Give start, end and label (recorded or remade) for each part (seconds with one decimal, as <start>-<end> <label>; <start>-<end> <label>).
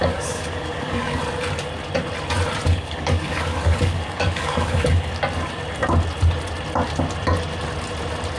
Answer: 0.0-1.2 remade; 1.2-2.7 recorded; 2.7-5.1 remade; 5.1-8.4 recorded